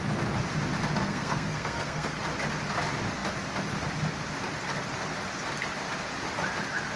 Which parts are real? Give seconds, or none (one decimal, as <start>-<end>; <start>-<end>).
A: 0.0-1.0; 2.2-7.0